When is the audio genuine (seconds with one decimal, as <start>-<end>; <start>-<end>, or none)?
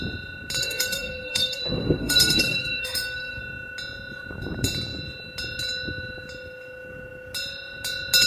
0.0-0.6; 3.4-8.3